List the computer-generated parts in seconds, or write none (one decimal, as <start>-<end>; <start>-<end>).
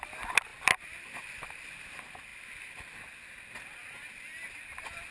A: none